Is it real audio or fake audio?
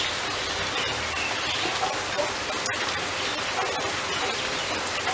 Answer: real